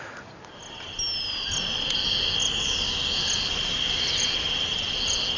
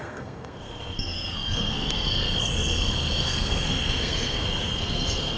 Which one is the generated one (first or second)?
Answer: second